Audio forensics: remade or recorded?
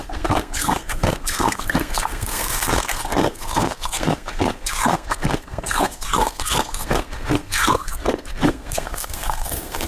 remade